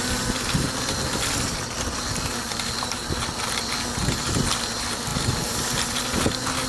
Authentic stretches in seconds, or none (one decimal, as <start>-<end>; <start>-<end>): 0.0-6.7

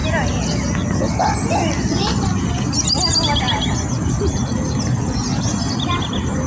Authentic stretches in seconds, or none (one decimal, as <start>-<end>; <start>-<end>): 0.0-3.9; 4.5-6.1

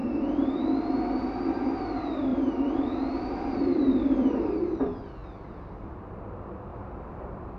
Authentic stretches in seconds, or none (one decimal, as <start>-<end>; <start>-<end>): 0.6-2.3; 4.6-5.2; 6.1-6.7

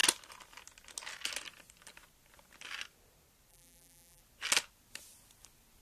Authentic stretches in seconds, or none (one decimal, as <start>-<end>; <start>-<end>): 0.0-3.5; 4.2-5.8